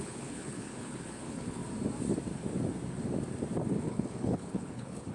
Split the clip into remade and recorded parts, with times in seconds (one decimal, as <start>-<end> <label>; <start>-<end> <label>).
0.0-1.6 remade; 1.6-3.8 recorded; 3.8-5.1 remade